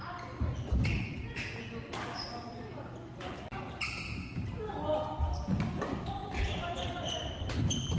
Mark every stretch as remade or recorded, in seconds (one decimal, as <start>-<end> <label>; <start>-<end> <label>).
0.0-8.0 recorded